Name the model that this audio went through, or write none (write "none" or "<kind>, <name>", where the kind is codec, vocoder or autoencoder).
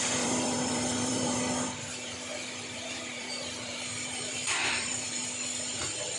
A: vocoder, BigVGAN v2